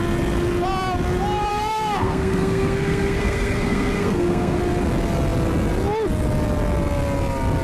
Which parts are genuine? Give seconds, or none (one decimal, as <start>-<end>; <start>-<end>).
0.0-1.5; 4.6-7.6